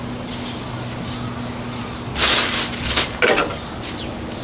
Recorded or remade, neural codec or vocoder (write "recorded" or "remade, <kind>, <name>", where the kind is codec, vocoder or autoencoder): recorded